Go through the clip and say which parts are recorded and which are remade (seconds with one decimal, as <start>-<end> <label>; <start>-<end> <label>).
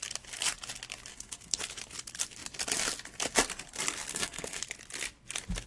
0.0-1.1 recorded; 1.1-1.6 remade; 1.6-4.1 recorded; 4.1-4.6 remade; 4.6-5.7 recorded